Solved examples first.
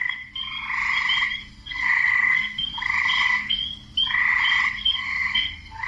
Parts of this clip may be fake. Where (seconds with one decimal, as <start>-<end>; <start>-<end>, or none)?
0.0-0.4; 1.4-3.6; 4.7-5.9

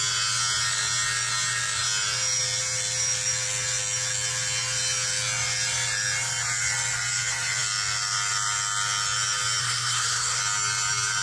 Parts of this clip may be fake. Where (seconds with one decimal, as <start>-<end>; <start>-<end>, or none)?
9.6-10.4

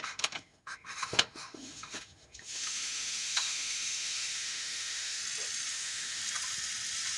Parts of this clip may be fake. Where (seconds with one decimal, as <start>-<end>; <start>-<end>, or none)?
0.0-5.2; 5.7-6.2

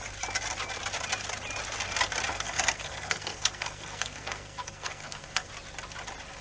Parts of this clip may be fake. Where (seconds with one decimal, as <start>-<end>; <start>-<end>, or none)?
2.3-5.5

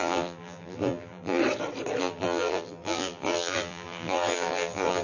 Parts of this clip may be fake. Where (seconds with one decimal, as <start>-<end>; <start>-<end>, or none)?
0.0-1.4; 2.0-5.0